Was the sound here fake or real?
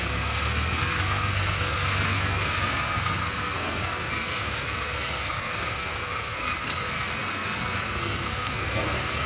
fake